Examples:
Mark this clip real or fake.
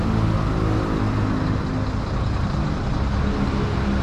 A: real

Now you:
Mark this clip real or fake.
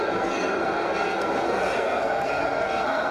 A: fake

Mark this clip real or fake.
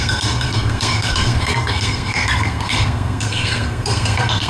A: fake